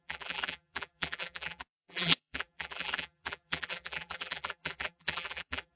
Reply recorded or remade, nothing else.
remade